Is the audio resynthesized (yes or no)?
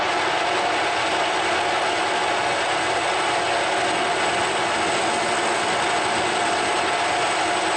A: no